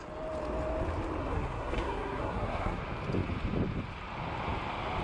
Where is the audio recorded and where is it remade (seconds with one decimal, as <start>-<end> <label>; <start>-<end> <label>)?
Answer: 0.0-1.2 recorded; 1.2-2.8 remade; 2.8-5.0 recorded